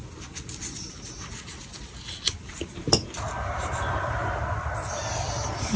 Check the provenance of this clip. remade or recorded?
recorded